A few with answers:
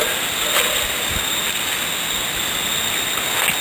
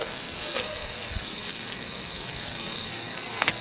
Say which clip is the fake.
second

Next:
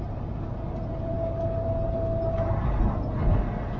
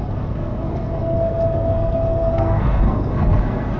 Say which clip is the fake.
second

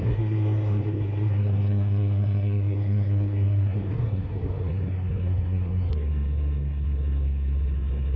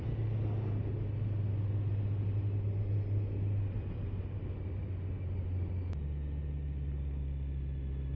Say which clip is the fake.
first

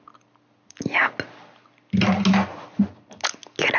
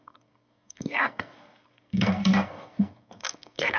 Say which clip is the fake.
second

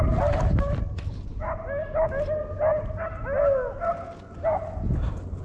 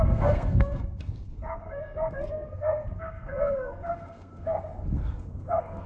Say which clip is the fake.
second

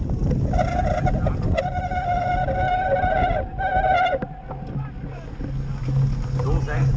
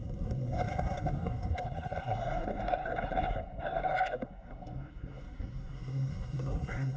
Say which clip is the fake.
second